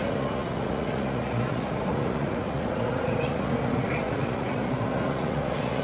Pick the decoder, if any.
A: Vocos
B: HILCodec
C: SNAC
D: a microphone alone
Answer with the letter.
A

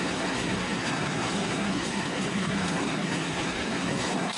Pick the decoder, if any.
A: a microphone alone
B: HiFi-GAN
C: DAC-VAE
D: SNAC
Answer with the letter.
D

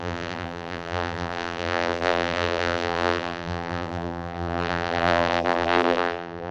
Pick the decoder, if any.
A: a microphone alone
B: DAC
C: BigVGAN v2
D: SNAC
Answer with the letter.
C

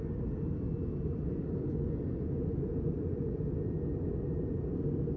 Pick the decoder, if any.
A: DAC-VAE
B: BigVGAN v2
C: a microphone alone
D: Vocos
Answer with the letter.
C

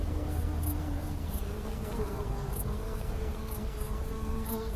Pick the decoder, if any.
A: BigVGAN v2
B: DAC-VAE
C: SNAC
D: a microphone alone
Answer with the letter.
C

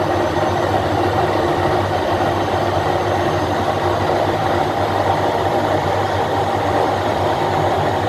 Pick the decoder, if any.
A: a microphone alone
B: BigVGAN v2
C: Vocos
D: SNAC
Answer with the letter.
B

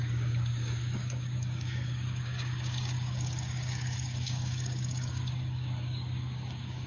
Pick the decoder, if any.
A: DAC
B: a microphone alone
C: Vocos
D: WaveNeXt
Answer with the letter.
A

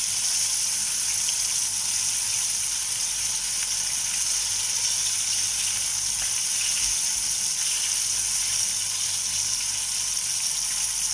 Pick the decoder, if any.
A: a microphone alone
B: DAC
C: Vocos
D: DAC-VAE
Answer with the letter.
A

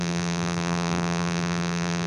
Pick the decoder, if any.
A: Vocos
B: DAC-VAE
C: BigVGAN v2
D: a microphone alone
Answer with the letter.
C